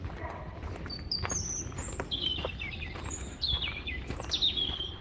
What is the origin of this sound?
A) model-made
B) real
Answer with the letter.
B